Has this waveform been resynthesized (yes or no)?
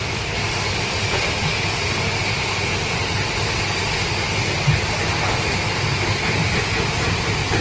no